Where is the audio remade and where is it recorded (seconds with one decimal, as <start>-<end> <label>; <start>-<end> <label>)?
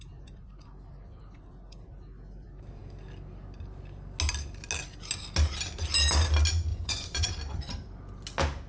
0.0-6.7 recorded; 6.7-7.3 remade; 7.3-8.7 recorded